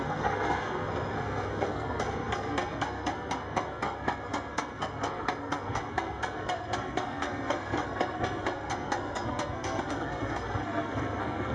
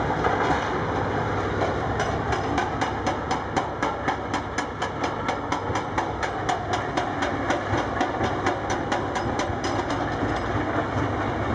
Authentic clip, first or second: second